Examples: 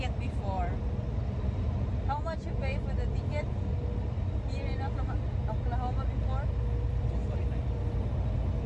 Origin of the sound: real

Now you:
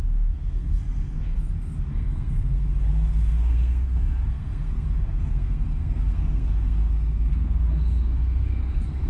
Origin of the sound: fake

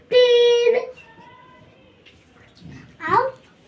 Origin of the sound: real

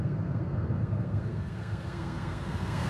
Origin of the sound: fake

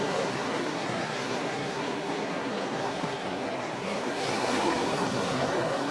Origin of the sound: fake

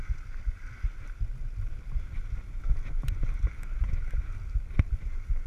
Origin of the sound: real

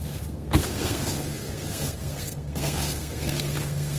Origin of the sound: fake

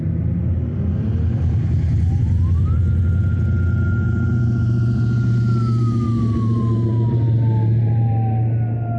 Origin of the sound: real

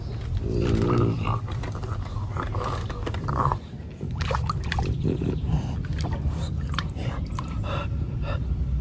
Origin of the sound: real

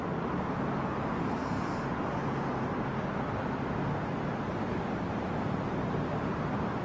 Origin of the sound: real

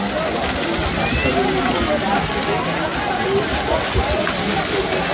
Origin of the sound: real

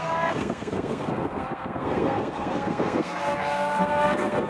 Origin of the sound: fake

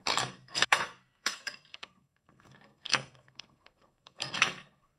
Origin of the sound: fake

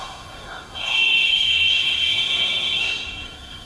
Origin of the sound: fake